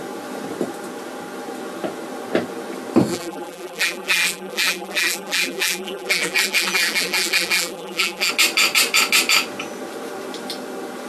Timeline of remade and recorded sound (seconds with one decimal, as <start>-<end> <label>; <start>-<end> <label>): 0.0-3.1 recorded; 3.1-8.3 remade; 8.3-11.1 recorded